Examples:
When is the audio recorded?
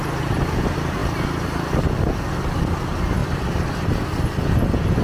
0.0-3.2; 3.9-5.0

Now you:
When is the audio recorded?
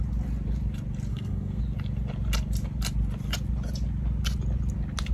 0.0-1.1; 1.6-5.1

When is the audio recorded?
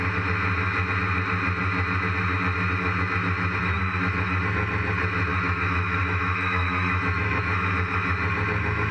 0.0-5.3; 7.4-8.9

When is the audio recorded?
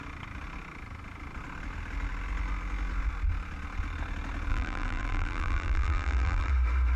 0.0-4.5; 6.5-7.0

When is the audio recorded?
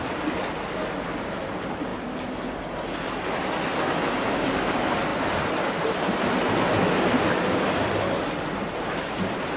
0.0-9.6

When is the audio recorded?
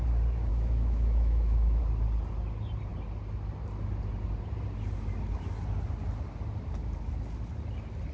0.0-0.5; 1.8-8.1